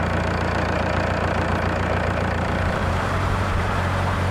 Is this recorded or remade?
remade